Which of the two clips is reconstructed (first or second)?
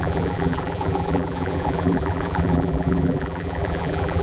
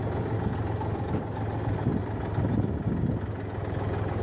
first